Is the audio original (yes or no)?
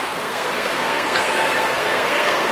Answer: no